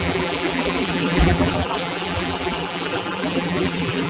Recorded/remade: remade